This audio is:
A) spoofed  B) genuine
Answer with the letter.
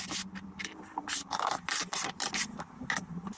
A